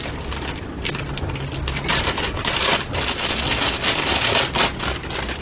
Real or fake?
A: real